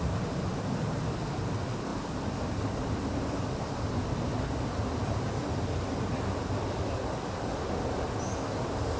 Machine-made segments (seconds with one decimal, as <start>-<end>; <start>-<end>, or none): none